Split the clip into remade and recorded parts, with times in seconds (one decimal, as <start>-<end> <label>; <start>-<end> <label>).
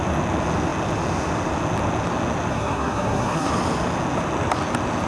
0.0-2.5 recorded; 2.5-3.5 remade; 3.5-5.1 recorded